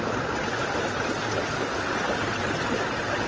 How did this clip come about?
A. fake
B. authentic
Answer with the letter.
B